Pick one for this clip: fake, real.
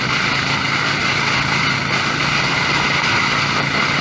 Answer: real